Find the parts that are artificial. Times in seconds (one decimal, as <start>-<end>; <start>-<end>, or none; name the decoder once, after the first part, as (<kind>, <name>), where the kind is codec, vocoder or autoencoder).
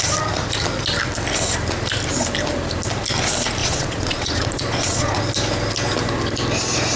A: 3.6-5.2 (vocoder, Vocos)